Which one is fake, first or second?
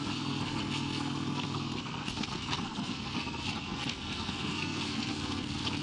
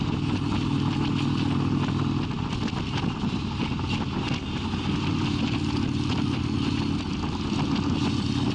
first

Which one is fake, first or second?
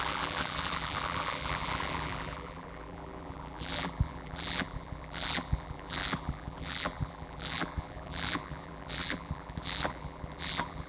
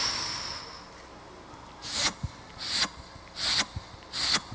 first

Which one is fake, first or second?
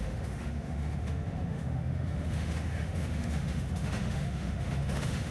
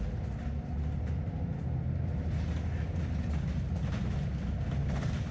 first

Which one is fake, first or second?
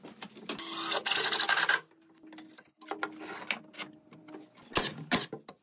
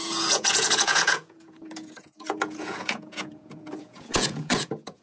second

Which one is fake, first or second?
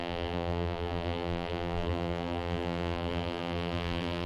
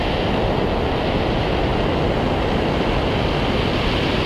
first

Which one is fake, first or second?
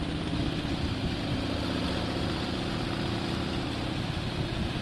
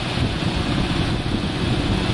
second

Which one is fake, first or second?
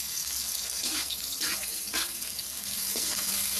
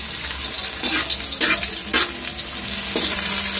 first